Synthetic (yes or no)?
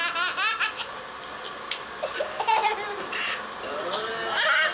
no